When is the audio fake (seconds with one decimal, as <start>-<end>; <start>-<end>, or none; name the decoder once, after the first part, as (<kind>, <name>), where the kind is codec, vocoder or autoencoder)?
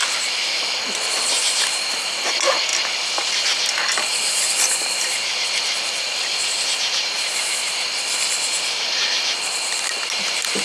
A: none